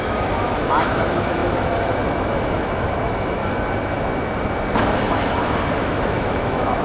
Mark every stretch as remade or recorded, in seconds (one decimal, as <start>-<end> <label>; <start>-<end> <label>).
0.0-3.4 remade; 3.4-5.8 recorded; 5.8-6.8 remade